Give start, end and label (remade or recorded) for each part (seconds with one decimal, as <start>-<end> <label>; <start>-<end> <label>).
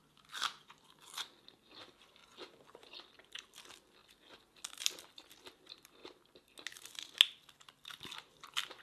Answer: 0.0-0.6 recorded; 0.6-2.2 remade; 2.2-3.0 recorded; 3.0-4.0 remade; 4.0-4.7 recorded; 4.7-6.0 remade; 6.0-7.9 recorded; 7.9-8.8 remade